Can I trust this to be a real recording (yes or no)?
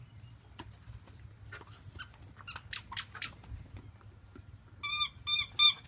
yes